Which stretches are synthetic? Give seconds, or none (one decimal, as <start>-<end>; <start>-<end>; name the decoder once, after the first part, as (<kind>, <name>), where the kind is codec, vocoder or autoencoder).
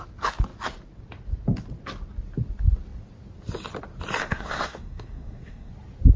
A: 4.2-5.7 (codec, SNAC)